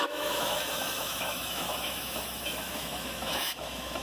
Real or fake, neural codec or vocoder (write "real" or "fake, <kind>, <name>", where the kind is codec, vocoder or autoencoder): fake, autoencoder, DAC-VAE